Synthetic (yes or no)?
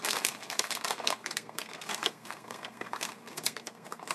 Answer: yes